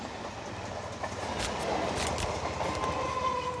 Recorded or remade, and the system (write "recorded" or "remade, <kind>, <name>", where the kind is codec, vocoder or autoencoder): recorded